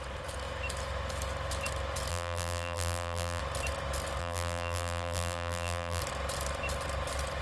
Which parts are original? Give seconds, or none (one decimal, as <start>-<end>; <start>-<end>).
0.0-2.1; 3.4-4.2; 6.0-7.4